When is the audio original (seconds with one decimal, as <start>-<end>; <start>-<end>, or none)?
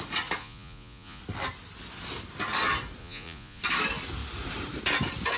0.0-0.4; 1.2-3.0; 3.6-5.4